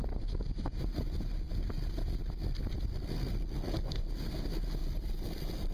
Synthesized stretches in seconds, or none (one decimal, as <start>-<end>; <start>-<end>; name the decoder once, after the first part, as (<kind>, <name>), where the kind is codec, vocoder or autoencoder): 4.8-5.7 (vocoder, BigVGAN v2)